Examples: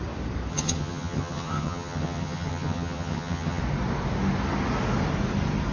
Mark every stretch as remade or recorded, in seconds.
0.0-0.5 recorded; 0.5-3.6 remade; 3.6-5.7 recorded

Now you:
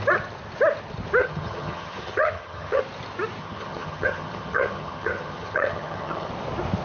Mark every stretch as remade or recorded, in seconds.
0.0-1.2 recorded; 1.2-2.8 remade; 2.8-3.4 recorded; 3.4-6.3 remade; 6.3-6.8 recorded

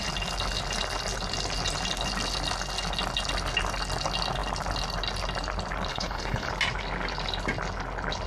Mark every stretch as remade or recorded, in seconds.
0.0-5.9 recorded; 5.9-6.5 remade; 6.5-8.3 recorded

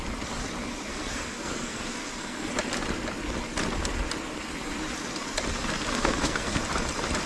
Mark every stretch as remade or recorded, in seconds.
0.0-0.9 recorded; 0.9-2.5 remade; 2.5-5.9 recorded; 5.9-6.6 remade; 6.6-7.3 recorded

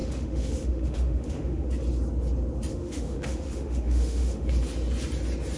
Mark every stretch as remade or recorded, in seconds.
0.0-1.7 remade; 1.7-2.7 recorded; 2.7-4.5 remade; 4.5-5.6 recorded

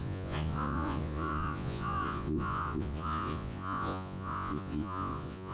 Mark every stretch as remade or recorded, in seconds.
0.0-5.5 remade

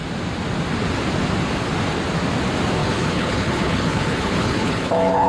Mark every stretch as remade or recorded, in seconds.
0.0-2.8 recorded; 2.8-5.3 remade

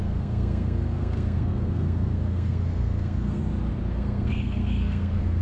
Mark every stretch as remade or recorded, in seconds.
0.0-3.4 remade; 3.4-3.9 recorded; 3.9-5.4 remade